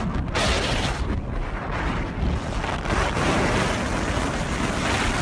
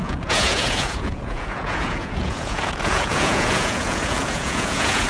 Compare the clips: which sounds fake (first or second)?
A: second